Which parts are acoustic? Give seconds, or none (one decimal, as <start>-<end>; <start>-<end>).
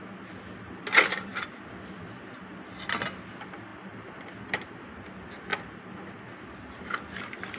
0.0-7.6